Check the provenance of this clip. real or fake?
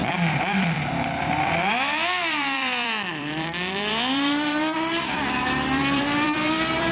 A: fake